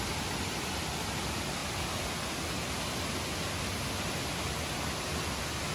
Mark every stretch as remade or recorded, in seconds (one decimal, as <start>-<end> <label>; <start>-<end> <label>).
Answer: 0.0-5.7 recorded